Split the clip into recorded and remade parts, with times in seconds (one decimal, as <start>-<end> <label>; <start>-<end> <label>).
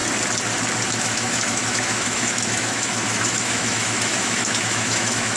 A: 0.0-1.0 recorded; 1.0-5.4 remade